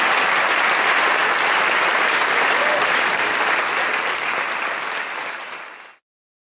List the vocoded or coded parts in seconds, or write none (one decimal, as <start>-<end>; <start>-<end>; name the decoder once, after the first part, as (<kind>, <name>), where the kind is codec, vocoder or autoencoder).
none